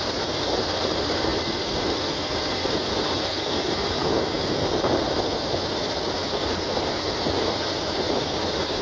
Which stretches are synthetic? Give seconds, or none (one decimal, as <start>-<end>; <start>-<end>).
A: 0.0-1.3; 6.3-8.8